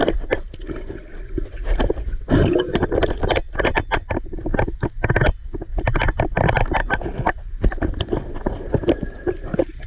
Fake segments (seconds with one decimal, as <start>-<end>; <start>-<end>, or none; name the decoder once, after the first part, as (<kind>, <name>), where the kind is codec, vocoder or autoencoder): 5.7-7.0 (vocoder, BigVGAN v2)